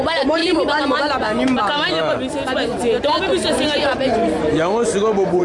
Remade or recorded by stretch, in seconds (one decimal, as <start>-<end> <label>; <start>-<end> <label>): 0.0-5.4 recorded